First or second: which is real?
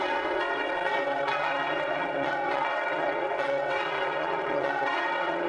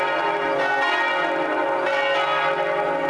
second